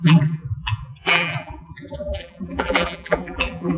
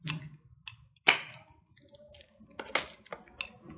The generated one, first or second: first